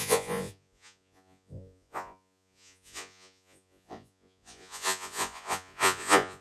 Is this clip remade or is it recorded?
remade